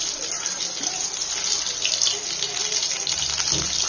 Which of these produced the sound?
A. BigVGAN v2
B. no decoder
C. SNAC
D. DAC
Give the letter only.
B